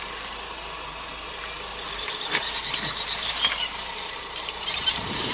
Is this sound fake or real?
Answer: fake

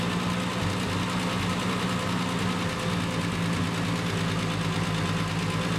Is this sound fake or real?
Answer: real